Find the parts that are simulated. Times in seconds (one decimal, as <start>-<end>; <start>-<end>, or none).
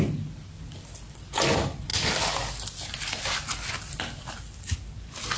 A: none